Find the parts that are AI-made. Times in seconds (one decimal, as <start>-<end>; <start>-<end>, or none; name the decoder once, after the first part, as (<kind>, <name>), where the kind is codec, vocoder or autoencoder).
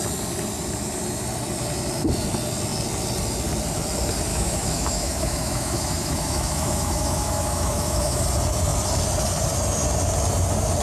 4.3-8.2 (autoencoder, DAC-VAE)